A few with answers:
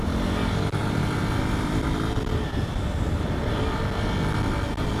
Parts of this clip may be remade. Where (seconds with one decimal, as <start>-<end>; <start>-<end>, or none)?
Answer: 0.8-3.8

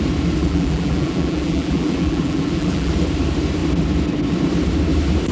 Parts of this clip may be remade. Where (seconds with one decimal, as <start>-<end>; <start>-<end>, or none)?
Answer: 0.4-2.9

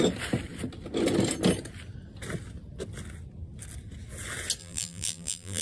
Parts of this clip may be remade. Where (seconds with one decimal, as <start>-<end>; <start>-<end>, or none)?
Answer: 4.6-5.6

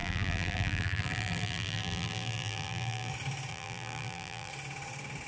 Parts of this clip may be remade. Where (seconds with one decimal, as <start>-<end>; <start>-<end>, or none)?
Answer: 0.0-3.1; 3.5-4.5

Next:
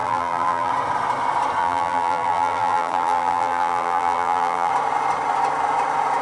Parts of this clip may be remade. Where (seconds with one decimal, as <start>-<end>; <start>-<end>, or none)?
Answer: 0.0-0.7; 1.6-4.7

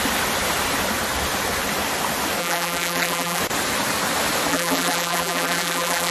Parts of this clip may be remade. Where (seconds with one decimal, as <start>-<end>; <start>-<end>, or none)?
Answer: 2.4-3.4; 4.5-6.1